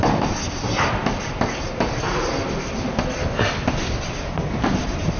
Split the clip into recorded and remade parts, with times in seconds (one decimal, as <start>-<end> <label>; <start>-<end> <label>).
0.0-5.2 recorded